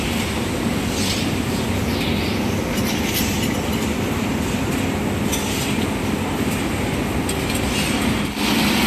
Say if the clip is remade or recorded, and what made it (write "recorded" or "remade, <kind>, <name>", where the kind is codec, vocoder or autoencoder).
recorded